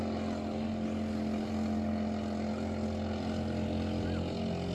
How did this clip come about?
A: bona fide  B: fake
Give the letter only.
A